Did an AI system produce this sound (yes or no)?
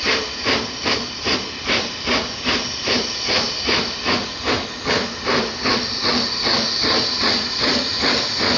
no